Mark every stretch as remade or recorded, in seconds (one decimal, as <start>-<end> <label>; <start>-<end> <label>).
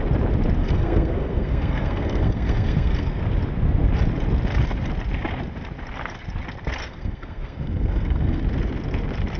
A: 0.0-0.6 recorded; 0.6-3.2 remade; 3.2-6.8 recorded; 6.8-8.4 remade; 8.4-9.4 recorded